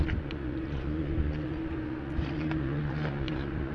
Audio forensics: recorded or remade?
remade